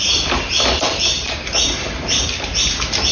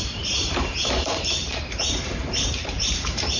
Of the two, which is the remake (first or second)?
second